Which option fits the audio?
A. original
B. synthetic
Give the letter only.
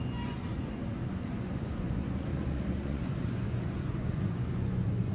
B